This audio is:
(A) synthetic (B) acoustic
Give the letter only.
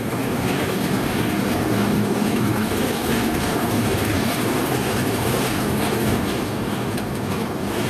A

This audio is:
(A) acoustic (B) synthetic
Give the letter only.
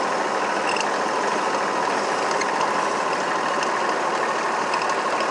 A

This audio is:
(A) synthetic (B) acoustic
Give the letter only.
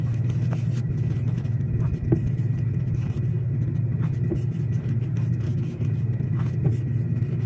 B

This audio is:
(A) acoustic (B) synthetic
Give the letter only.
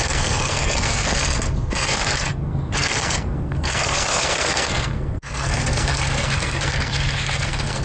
B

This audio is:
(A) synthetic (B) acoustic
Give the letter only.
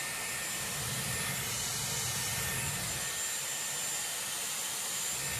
B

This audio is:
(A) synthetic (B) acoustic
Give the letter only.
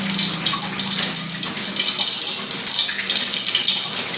B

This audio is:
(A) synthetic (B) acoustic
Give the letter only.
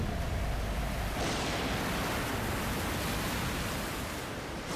B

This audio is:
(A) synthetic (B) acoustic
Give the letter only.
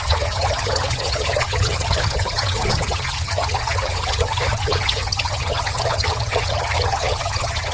A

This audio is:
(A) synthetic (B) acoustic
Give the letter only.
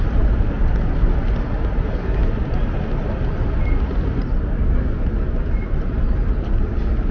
B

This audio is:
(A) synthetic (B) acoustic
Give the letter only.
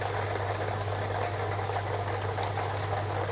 B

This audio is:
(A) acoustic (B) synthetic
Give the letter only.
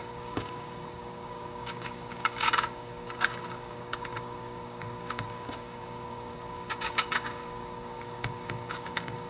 B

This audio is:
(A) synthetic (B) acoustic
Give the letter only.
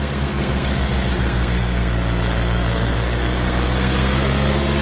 A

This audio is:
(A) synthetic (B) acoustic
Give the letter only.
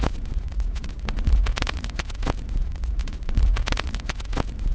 A